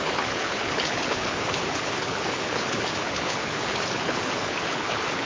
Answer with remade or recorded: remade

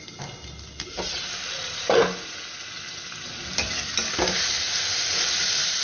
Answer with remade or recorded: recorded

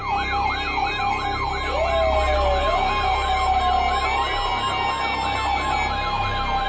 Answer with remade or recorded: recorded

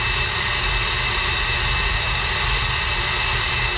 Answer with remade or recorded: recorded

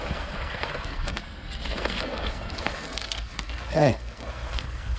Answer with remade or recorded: remade